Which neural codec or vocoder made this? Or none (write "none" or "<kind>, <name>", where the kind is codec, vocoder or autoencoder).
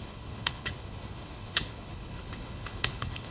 codec, HILCodec